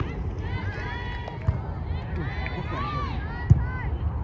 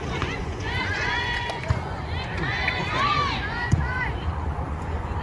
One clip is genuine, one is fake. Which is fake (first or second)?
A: second